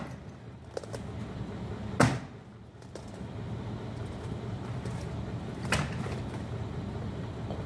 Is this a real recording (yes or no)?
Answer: yes